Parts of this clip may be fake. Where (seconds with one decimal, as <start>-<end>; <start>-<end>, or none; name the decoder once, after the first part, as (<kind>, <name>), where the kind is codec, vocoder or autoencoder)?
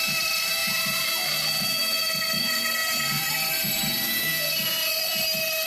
0.0-4.3 (vocoder, BigVGAN v2)